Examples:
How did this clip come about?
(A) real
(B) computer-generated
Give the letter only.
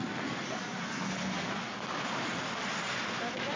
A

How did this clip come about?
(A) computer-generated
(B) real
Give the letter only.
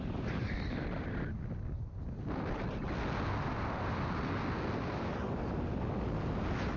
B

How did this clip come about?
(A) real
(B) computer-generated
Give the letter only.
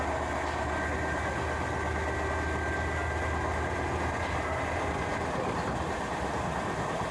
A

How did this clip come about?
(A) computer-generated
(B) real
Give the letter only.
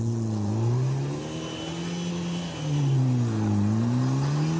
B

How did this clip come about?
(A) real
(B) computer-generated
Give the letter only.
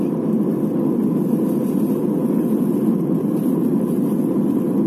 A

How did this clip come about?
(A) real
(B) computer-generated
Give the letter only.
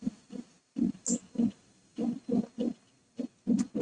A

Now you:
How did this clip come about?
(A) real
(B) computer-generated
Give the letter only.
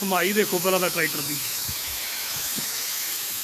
B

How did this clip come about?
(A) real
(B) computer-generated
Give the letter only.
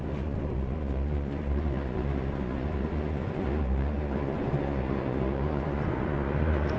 B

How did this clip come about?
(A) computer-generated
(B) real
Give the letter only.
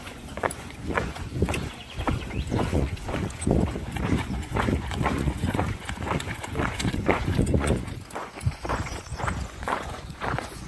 A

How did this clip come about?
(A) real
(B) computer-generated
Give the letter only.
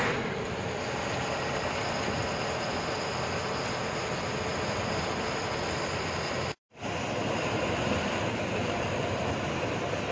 A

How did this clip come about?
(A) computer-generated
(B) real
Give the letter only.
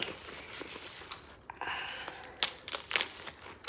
B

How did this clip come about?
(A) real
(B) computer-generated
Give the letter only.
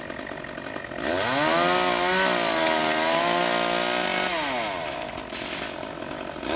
A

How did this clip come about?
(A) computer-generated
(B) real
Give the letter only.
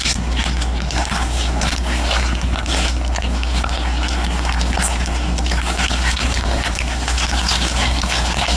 A